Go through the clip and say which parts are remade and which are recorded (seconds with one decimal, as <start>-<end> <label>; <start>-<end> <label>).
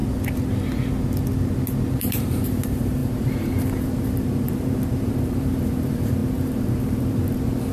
0.0-1.9 recorded; 1.9-7.7 remade